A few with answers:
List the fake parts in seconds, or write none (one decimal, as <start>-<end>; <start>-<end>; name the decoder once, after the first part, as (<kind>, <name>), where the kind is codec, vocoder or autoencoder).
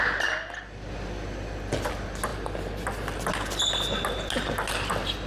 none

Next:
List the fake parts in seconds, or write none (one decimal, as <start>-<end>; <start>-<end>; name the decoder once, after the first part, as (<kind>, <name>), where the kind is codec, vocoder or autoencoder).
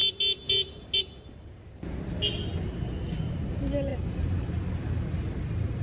3.9-4.6 (vocoder, BigVGAN v2)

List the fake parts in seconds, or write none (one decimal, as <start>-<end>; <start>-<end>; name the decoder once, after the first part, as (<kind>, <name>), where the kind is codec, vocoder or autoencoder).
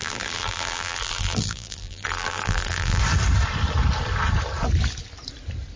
0.0-3.0 (vocoder, BigVGAN v2)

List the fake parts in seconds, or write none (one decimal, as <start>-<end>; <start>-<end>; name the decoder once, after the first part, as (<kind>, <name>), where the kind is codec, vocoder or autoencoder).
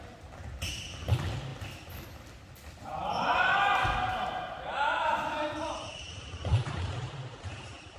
none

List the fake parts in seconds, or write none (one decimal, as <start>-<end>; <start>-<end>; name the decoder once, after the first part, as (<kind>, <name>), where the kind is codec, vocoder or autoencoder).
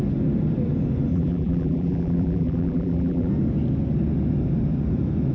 1.1-3.3 (vocoder, BigVGAN v2)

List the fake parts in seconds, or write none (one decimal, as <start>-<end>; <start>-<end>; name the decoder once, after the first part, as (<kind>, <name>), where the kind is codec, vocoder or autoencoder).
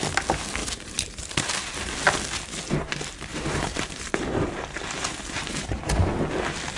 0.6-1.9 (vocoder, BigVGAN v2); 3.3-6.0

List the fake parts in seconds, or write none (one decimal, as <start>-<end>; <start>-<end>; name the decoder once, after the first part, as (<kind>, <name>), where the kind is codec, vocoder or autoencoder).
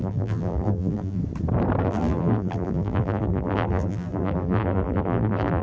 0.0-1.2 (vocoder, BigVGAN v2); 1.8-5.6